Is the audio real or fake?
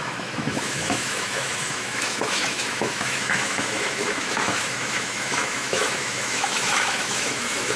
fake